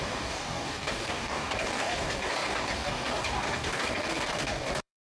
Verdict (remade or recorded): remade